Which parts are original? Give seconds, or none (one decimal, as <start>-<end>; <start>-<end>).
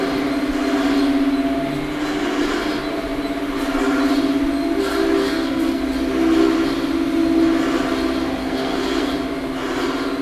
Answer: 0.0-5.2; 5.8-8.4; 9.1-10.2